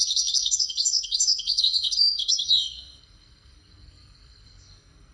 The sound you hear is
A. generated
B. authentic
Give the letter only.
A